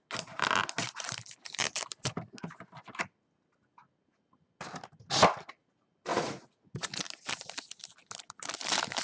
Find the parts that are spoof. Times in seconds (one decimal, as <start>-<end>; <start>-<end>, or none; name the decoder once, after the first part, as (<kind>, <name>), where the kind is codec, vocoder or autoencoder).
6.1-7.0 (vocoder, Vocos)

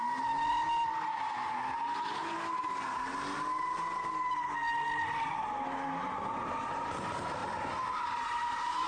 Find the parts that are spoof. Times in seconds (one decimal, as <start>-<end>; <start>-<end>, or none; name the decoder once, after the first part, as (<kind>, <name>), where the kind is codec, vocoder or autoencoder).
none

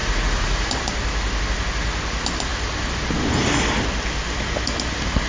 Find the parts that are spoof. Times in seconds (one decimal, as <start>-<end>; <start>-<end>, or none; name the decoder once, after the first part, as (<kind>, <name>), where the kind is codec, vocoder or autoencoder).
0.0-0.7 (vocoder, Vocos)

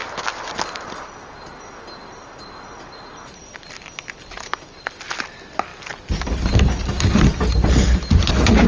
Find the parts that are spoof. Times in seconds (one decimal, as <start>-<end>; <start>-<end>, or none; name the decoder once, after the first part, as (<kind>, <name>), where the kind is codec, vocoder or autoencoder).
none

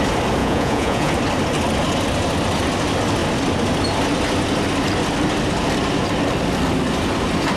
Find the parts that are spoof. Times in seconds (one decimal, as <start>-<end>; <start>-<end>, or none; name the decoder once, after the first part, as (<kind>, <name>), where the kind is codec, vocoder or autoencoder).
0.4-1.1 (vocoder, Vocos)

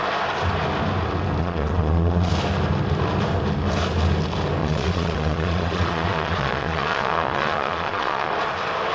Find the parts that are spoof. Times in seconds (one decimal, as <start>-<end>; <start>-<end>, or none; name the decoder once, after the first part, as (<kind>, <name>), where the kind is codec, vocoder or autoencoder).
1.4-2.3 (vocoder, Vocos); 4.6-8.3